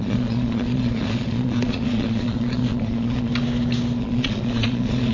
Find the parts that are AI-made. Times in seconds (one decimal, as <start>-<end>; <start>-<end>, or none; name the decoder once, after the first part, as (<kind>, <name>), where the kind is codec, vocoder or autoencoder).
0.0-3.3 (vocoder, Vocos); 4.0-5.1